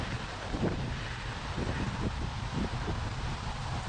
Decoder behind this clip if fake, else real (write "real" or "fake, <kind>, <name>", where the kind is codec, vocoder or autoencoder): real